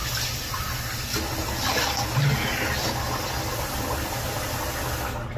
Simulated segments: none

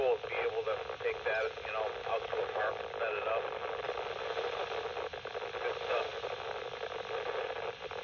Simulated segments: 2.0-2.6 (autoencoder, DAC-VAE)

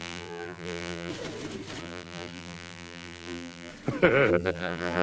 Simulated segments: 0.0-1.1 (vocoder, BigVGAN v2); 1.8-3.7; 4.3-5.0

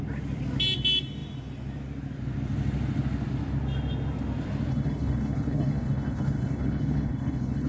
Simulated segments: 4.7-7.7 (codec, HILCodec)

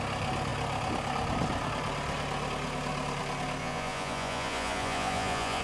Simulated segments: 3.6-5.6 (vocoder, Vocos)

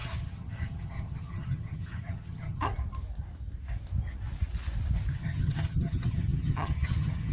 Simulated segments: 0.0-2.7 (vocoder, HiFi-GAN); 5.1-7.3

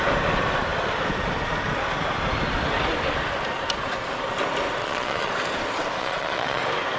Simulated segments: 4.8-5.3 (vocoder, Vocos); 6.0-6.6

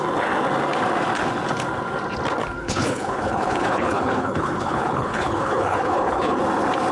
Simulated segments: 2.6-6.4 (codec, HILCodec)